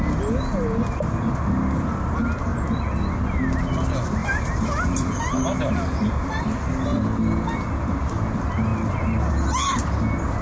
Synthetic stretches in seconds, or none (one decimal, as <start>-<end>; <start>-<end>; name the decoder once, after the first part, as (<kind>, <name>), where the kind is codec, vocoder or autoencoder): 4.2-6.4 (vocoder, BigVGAN v2)